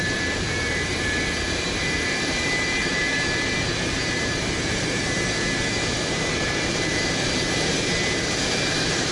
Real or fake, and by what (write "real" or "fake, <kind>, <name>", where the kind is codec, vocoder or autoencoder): fake, vocoder, BigVGAN v2